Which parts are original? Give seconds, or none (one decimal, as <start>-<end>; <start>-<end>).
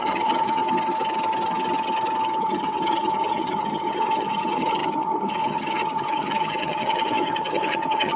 0.6-2.4